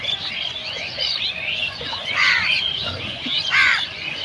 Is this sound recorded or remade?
remade